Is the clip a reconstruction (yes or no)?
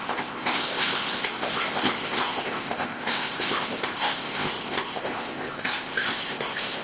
yes